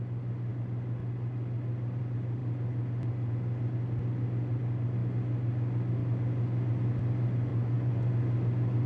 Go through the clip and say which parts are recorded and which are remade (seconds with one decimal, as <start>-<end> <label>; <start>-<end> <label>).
0.0-7.5 recorded; 7.5-8.1 remade; 8.1-8.9 recorded